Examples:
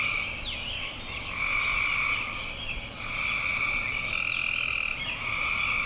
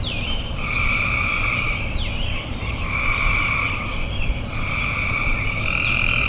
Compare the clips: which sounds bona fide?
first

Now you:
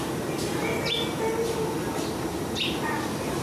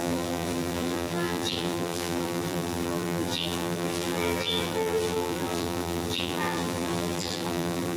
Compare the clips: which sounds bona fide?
first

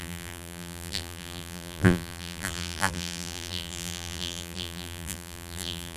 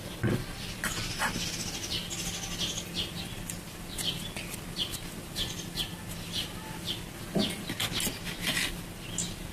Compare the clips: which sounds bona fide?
second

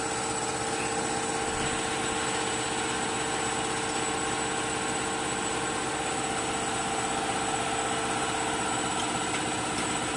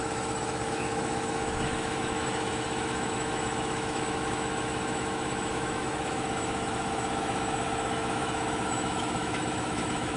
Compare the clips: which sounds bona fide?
first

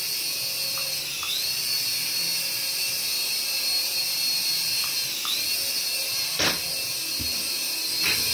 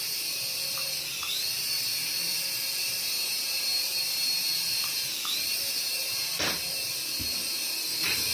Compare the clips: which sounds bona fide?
first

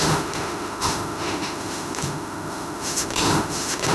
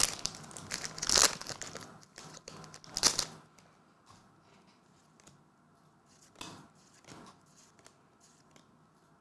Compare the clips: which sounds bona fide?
second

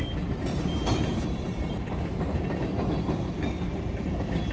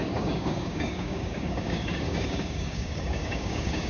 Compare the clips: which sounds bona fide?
first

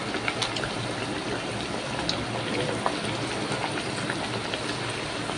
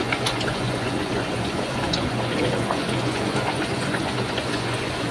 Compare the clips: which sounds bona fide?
first